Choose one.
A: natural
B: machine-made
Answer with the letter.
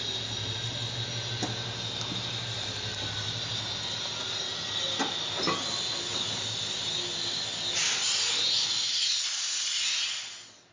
A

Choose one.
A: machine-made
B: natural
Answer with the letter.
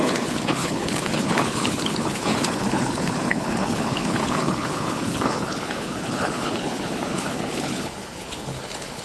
A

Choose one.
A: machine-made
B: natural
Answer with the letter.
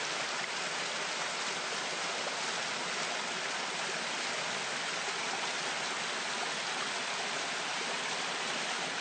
B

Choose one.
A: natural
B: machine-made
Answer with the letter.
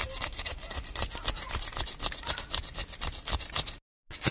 A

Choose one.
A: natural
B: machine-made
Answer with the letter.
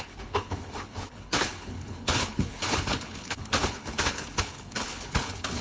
B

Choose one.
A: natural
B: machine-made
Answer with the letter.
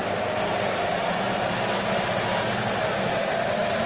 A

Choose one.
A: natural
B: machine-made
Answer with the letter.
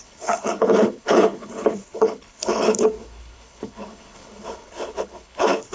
B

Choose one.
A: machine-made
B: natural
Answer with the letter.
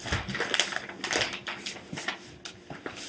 B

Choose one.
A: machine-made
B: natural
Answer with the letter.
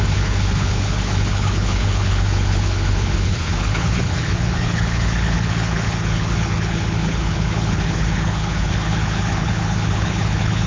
A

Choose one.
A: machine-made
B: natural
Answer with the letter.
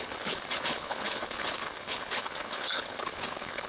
A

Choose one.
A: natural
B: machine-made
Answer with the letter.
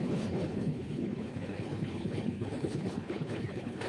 B